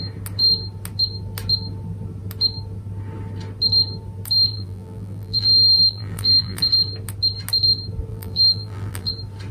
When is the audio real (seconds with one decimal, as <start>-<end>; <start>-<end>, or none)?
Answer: 0.0-4.5; 6.6-8.1; 9.1-9.5